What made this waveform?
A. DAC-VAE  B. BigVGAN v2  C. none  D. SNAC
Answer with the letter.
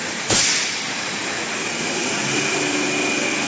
C